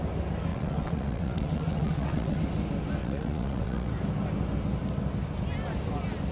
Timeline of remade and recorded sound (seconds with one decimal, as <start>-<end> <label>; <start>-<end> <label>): 0.0-0.5 recorded; 0.5-2.4 remade; 2.4-3.0 recorded; 3.0-3.9 remade; 3.9-6.3 recorded